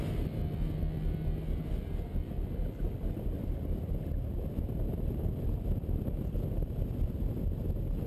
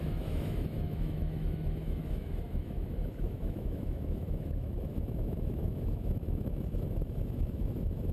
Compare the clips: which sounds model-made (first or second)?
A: second